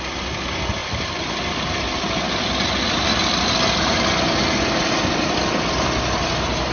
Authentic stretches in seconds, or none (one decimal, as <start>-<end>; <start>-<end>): 0.0-6.7